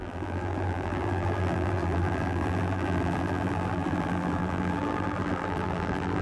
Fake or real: fake